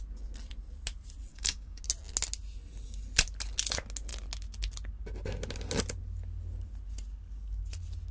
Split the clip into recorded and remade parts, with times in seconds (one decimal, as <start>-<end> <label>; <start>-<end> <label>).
0.0-1.3 recorded; 1.3-1.8 remade; 1.8-8.1 recorded